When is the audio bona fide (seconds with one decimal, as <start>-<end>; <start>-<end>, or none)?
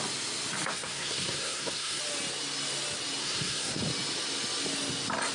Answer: 0.0-0.7; 2.0-3.2; 3.8-5.3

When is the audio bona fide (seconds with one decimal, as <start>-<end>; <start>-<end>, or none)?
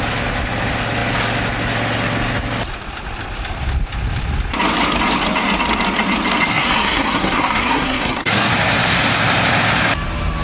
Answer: 0.0-6.5; 8.5-10.4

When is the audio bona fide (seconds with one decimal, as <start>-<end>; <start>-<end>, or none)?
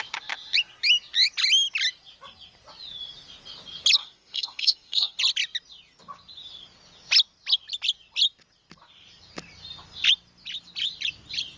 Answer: 0.0-4.0; 5.2-11.6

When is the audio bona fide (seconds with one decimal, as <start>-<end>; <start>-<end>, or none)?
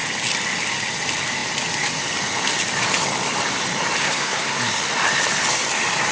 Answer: 0.0-4.0; 4.6-6.1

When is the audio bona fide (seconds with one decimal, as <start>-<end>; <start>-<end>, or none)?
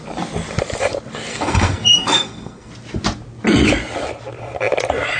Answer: 0.0-1.3; 2.7-5.2